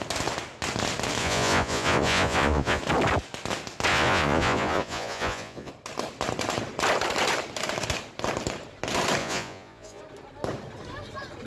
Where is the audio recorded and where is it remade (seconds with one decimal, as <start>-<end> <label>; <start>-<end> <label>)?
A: 0.0-1.2 recorded; 1.2-2.8 remade; 2.8-3.9 recorded; 3.9-5.7 remade; 5.7-9.2 recorded; 9.2-10.0 remade; 10.0-11.5 recorded